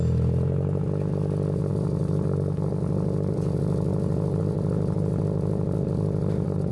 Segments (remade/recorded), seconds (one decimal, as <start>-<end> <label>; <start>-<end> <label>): 0.0-6.7 recorded